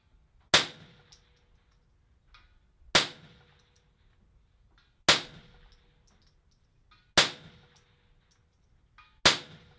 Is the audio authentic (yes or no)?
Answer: yes